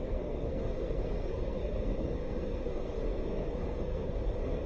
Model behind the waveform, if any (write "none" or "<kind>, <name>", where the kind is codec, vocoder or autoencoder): codec, SNAC